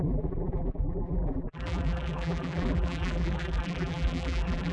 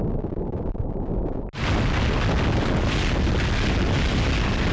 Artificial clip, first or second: first